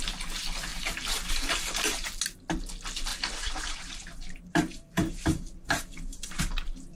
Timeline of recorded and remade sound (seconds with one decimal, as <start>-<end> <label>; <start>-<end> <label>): 0.0-0.7 recorded; 0.7-2.2 remade; 2.2-3.1 recorded; 3.1-6.5 remade; 6.5-7.0 recorded